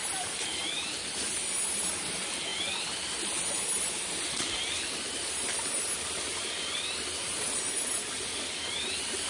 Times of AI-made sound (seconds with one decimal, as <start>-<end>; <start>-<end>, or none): none